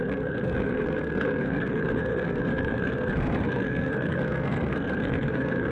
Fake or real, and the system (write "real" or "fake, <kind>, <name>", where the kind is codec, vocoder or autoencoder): fake, codec, SNAC